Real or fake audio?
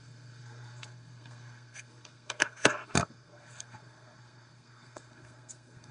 fake